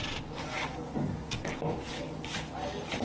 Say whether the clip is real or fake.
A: real